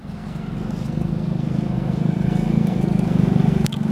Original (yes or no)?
no